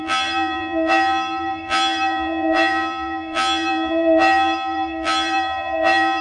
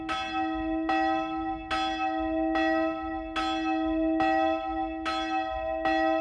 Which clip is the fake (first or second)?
first